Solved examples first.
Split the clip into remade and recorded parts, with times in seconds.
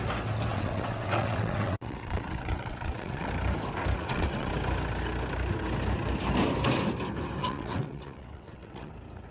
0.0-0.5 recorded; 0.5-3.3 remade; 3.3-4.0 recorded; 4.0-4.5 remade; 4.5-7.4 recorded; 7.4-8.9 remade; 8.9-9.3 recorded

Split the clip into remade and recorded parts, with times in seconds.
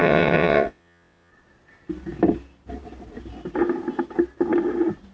0.0-1.3 remade; 1.3-5.1 recorded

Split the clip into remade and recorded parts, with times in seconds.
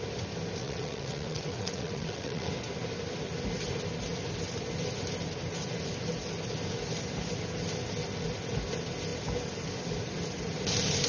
0.0-0.6 recorded; 0.6-2.5 remade; 2.5-11.1 recorded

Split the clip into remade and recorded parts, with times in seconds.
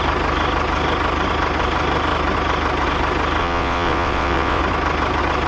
0.0-3.4 recorded; 3.4-4.6 remade; 4.6-5.5 recorded